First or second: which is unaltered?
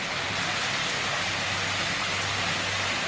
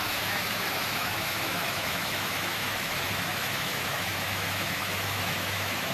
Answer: first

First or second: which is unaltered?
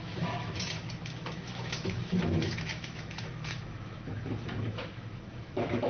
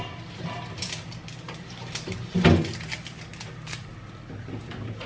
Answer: second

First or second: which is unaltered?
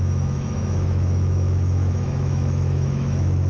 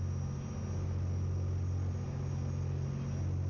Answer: second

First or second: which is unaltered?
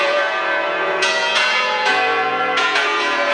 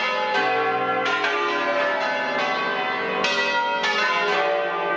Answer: second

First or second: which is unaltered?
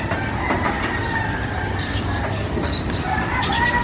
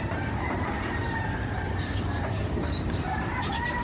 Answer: first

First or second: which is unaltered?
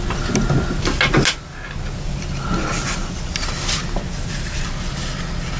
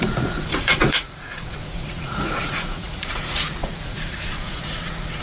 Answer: first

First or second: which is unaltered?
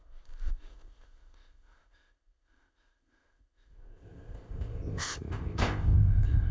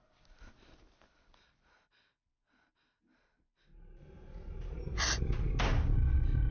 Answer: second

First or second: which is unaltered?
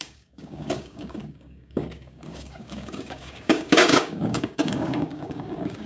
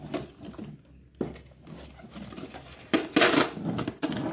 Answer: second